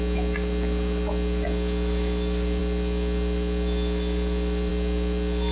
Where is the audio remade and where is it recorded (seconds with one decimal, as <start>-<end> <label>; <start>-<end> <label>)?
0.0-5.5 recorded